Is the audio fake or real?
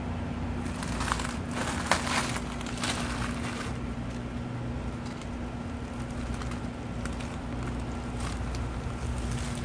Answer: real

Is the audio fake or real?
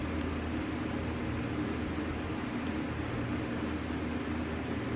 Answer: real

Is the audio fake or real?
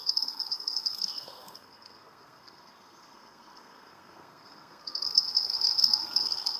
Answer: fake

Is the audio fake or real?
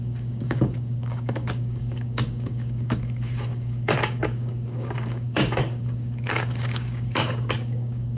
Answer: fake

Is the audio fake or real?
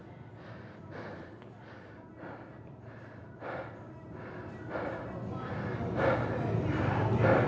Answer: real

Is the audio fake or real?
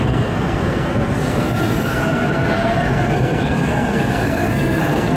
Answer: fake